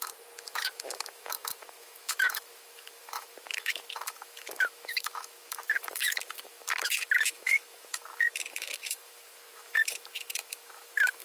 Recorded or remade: remade